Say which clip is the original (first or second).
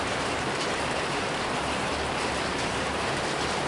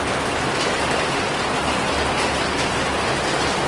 second